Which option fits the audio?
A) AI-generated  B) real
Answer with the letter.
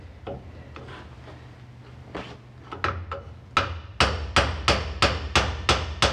B